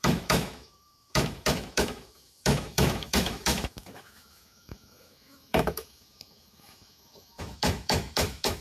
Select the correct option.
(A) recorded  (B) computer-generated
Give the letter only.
B